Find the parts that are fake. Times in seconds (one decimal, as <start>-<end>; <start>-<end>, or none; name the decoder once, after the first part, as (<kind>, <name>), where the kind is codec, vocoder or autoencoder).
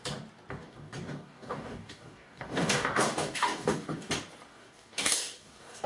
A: 0.6-4.1 (codec, DAC); 4.5-5.9